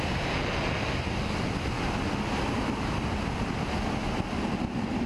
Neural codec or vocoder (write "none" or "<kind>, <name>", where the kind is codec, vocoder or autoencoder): none